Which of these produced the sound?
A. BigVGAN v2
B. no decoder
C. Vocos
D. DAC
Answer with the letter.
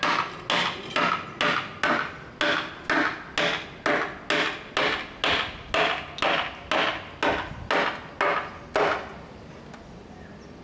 B